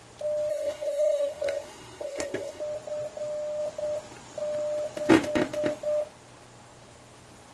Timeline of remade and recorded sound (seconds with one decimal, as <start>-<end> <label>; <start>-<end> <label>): 0.0-0.5 recorded; 0.5-2.6 remade; 2.6-7.5 recorded